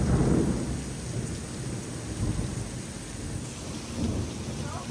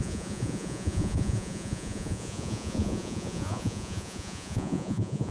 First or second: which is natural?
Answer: first